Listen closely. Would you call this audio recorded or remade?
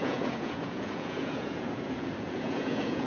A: remade